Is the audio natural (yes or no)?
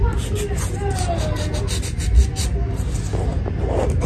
yes